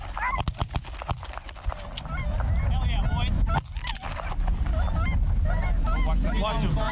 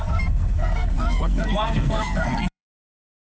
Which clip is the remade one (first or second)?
second